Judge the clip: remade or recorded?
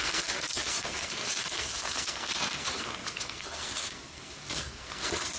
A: remade